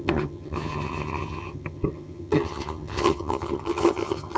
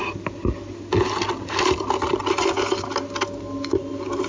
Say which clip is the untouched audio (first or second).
second